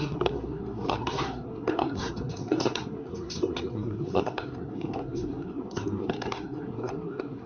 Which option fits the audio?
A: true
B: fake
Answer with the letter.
B